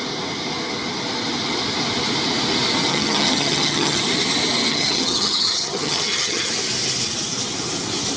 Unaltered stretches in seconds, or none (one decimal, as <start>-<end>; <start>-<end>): 0.0-2.9; 4.0-4.7; 6.5-8.2